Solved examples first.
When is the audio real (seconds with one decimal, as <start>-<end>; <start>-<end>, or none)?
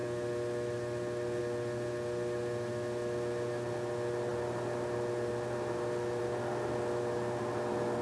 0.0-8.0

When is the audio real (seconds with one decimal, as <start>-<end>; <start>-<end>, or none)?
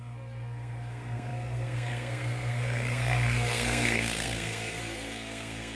none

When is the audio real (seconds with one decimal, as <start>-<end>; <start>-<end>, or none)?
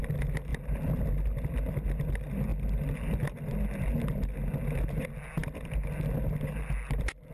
0.0-0.5; 1.1-7.3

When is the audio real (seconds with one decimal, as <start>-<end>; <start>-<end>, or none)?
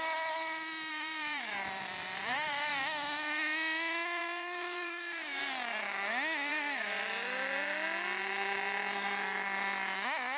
0.0-0.9; 2.7-4.2; 5.4-6.5; 7.1-10.4